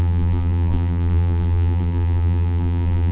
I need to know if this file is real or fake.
fake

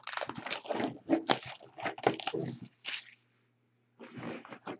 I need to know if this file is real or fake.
real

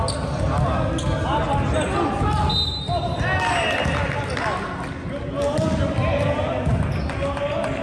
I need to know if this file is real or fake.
real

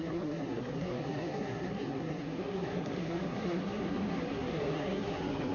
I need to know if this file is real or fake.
fake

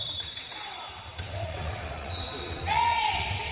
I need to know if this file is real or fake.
fake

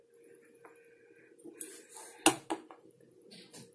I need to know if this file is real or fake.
real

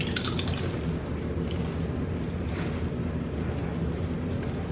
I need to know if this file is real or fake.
real